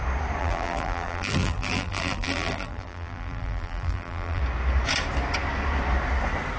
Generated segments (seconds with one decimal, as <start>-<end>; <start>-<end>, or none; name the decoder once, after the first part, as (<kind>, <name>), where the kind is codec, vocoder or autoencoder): 0.4-4.4 (vocoder, BigVGAN v2)